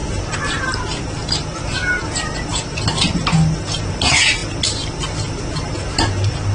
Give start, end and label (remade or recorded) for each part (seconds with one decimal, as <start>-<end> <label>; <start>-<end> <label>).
0.0-6.5 recorded